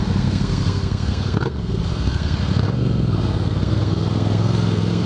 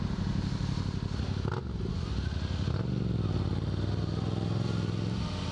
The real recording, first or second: second